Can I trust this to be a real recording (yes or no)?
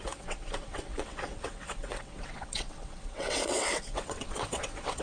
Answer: no